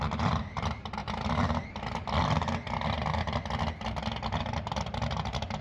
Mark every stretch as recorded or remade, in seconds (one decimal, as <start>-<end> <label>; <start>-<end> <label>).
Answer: 0.0-1.0 remade; 1.0-4.4 recorded; 4.4-5.6 remade